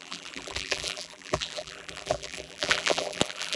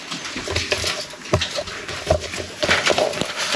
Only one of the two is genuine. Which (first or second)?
second